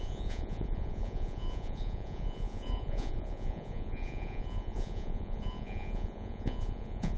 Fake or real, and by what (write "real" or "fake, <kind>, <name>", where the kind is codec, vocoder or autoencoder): fake, vocoder, Vocos